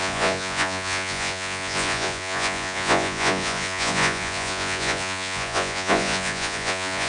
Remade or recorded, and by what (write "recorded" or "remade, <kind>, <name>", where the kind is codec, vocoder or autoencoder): remade, vocoder, Vocos